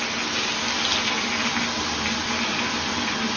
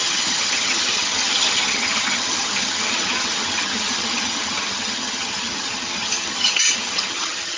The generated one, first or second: second